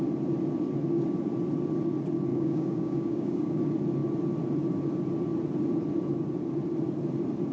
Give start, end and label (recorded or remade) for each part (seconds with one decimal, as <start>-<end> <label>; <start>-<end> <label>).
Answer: 0.0-2.3 recorded; 2.3-3.6 remade; 3.6-7.5 recorded